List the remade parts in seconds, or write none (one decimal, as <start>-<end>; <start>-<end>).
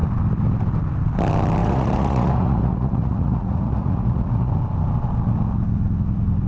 1.6-4.5